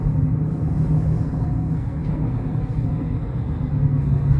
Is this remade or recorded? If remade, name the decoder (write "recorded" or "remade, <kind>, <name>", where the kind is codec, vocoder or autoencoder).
remade, codec, SNAC